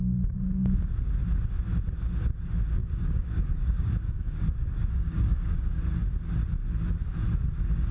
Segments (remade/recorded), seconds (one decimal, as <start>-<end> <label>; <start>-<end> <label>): 0.0-2.8 recorded; 2.8-5.9 remade; 5.9-7.9 recorded